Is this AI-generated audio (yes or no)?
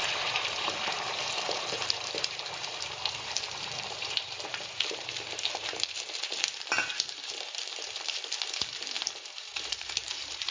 yes